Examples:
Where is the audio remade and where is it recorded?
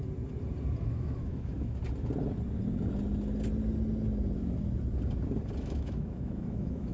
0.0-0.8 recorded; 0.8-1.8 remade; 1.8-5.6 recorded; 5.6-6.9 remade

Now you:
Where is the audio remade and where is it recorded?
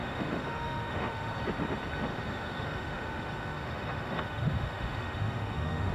0.0-1.3 remade; 1.3-2.1 recorded; 2.1-5.9 remade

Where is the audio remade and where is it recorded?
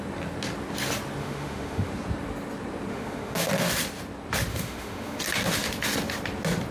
0.0-1.2 recorded; 1.2-1.9 remade; 1.9-2.9 recorded; 2.9-3.5 remade; 3.5-4.5 recorded; 4.5-5.2 remade; 5.2-6.7 recorded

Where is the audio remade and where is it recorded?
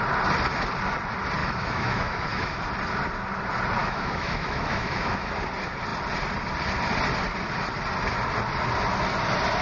0.0-1.4 recorded; 1.4-2.6 remade; 2.6-3.8 recorded; 3.8-5.3 remade; 5.3-9.6 recorded